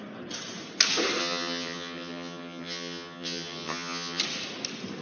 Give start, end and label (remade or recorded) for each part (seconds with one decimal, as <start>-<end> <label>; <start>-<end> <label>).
0.0-1.2 recorded; 1.2-4.2 remade; 4.2-5.0 recorded